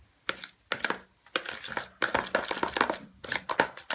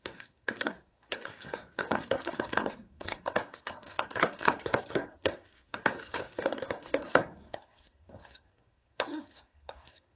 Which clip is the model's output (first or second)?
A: second